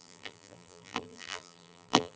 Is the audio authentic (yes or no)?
no